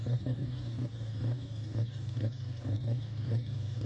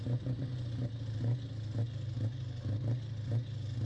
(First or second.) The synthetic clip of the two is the first